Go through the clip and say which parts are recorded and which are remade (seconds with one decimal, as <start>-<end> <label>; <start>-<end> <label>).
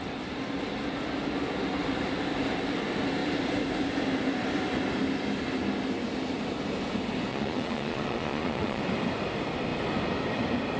0.0-7.3 recorded; 7.3-8.8 remade; 8.8-10.8 recorded